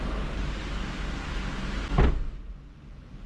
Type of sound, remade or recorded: recorded